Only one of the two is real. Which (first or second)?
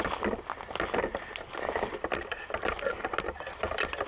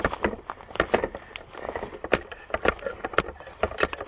first